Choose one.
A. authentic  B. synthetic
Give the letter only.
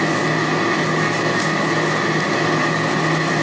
A